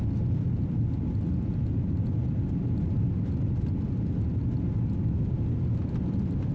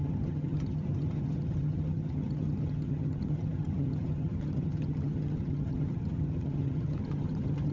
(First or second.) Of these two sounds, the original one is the first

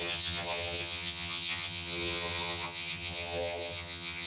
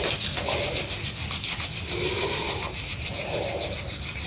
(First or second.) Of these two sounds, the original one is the second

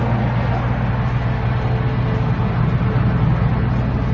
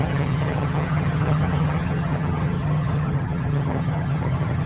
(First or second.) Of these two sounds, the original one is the first